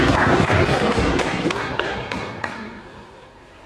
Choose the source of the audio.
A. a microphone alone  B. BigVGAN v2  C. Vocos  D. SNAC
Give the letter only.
D